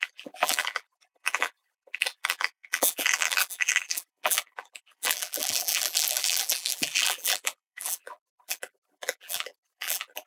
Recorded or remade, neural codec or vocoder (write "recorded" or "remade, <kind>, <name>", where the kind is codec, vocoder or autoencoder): remade, vocoder, BigVGAN v2